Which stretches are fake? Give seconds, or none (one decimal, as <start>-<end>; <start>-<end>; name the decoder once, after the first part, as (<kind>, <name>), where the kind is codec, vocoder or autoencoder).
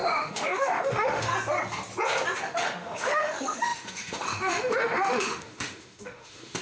0.0-1.3 (autoencoder, DAC-VAE); 2.4-6.6